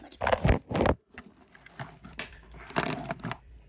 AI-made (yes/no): yes